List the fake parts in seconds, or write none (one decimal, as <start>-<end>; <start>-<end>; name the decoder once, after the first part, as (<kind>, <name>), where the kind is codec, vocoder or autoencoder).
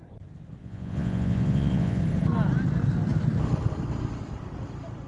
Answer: 0.6-2.0 (vocoder, Vocos)